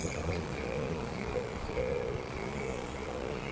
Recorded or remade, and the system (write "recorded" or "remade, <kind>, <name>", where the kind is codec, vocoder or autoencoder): remade, vocoder, Vocos